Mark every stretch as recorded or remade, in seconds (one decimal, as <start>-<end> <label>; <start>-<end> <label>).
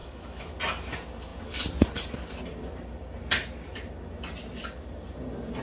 0.0-0.5 remade; 0.5-5.6 recorded